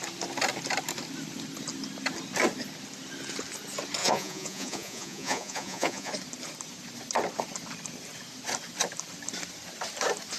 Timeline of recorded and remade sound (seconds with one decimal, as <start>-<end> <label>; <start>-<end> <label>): 0.0-4.0 recorded; 4.0-6.1 remade; 6.1-10.4 recorded